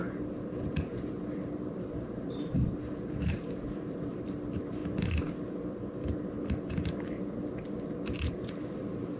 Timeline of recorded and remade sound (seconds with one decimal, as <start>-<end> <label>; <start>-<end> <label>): 0.0-4.8 remade; 4.8-8.3 recorded; 8.3-9.2 remade